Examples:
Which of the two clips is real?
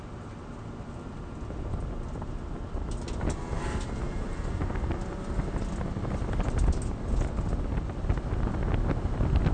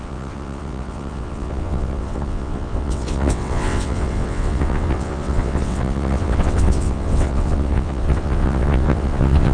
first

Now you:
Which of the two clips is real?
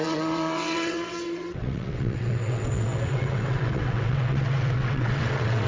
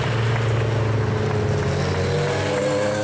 second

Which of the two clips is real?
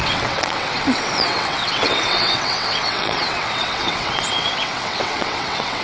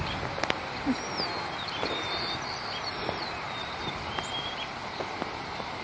second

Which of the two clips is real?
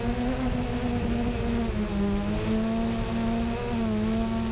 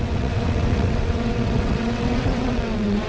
first